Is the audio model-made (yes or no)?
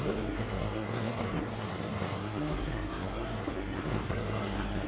yes